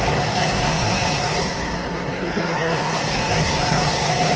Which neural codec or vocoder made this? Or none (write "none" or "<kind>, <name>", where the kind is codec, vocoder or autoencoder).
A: codec, SNAC